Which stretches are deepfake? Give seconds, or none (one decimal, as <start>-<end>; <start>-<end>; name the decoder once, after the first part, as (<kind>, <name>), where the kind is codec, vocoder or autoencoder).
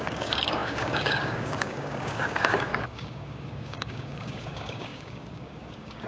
0.0-6.1 (codec, DAC)